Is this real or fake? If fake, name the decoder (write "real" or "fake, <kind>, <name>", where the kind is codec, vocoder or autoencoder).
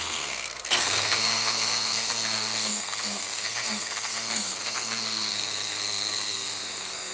fake, codec, SNAC